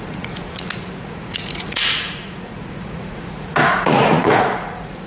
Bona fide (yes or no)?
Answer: no